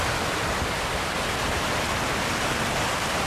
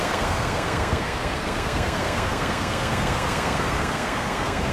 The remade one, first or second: second